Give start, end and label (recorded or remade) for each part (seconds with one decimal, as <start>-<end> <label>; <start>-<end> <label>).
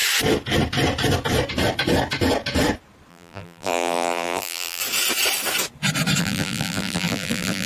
0.0-3.1 recorded; 3.1-4.8 remade; 4.8-6.2 recorded; 6.2-7.7 remade